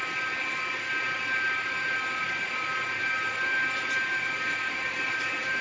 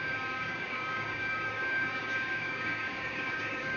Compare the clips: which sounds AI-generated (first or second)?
second